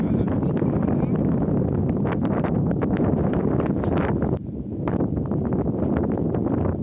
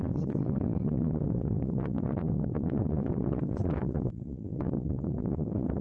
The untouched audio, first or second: first